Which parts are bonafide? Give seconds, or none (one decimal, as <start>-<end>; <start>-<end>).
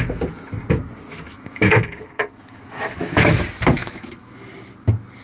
0.0-1.1; 3.4-3.8; 4.4-5.2